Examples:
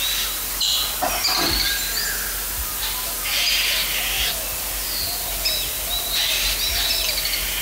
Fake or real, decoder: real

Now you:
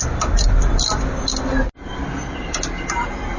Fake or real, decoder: real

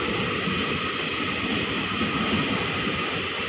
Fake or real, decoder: real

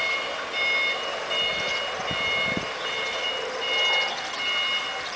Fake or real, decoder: real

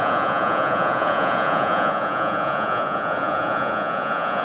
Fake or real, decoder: fake, vocoder, Vocos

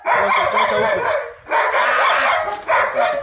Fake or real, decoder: real